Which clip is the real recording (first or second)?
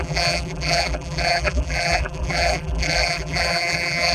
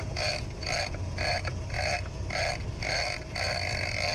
second